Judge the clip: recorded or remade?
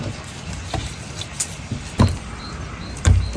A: recorded